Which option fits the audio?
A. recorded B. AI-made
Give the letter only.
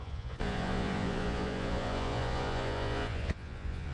B